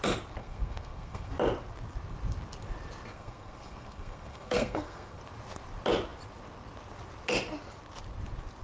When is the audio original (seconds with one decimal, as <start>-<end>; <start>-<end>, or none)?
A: 0.0-0.4; 1.3-3.1; 5.2-8.6